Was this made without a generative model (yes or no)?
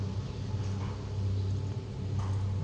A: yes